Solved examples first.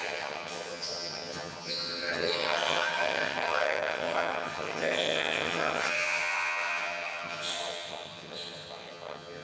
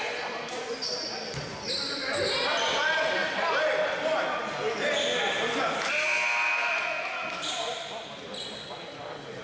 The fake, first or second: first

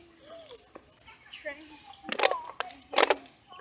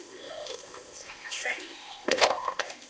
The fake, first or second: second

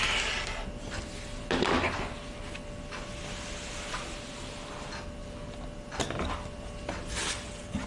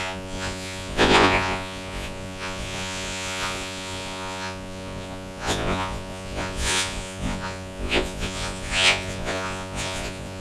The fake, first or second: second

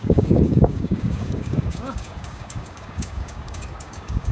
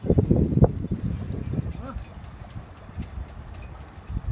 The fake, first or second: first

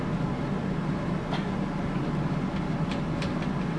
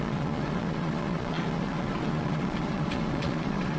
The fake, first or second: second